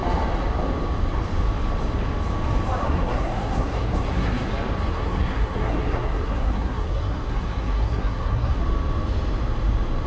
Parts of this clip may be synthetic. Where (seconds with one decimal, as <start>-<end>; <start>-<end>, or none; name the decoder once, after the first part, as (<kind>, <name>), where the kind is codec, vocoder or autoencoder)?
2.8-4.5 (codec, SNAC); 4.9-8.6